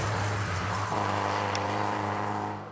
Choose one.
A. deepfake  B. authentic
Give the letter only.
A